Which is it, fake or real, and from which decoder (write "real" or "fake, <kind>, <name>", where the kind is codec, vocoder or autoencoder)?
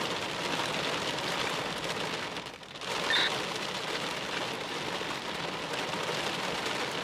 real